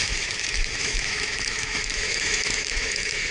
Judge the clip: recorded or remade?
remade